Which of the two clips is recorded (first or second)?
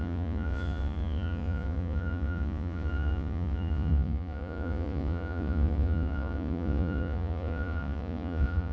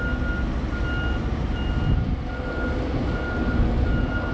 second